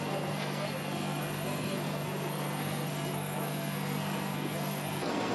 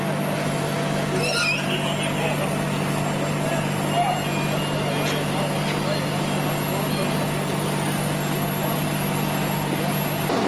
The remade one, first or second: first